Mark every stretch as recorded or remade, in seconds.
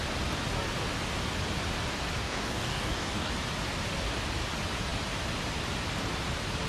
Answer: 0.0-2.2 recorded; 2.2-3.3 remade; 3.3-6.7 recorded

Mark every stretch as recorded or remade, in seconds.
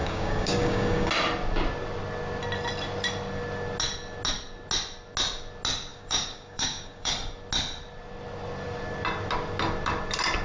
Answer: 0.0-1.1 remade; 1.1-5.9 recorded; 5.9-7.1 remade; 7.1-10.4 recorded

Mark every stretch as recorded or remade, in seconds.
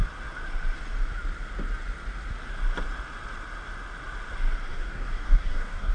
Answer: 0.0-4.7 recorded; 4.7-5.9 remade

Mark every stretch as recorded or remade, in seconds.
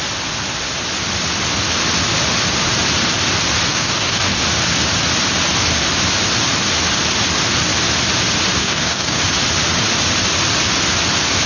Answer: 0.0-3.7 recorded; 3.7-4.4 remade; 4.4-8.6 recorded; 8.6-9.2 remade; 9.2-11.5 recorded